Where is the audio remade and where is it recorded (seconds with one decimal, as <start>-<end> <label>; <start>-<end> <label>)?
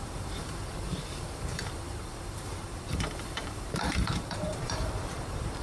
0.0-5.6 remade